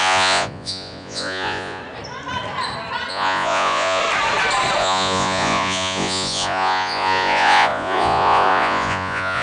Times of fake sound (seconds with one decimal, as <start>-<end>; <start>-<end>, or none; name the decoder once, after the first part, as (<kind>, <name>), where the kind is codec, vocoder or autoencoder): 0.0-1.8 (vocoder, Vocos); 3.1-4.0; 4.8-9.4